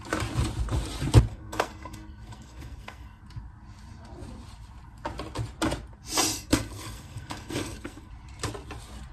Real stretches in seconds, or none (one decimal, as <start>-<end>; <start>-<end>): 0.0-1.3; 3.2-6.3; 8.1-9.1